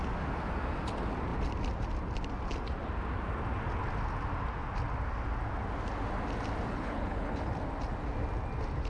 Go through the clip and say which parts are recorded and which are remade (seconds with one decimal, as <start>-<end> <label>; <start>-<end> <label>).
0.0-6.7 recorded; 6.7-7.5 remade; 7.5-8.9 recorded